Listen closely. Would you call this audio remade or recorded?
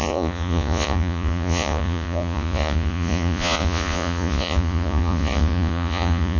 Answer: remade